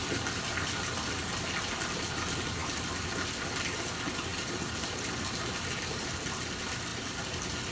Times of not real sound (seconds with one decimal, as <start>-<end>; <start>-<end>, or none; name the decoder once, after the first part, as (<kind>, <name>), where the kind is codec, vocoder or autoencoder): none